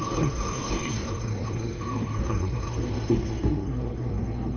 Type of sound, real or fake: fake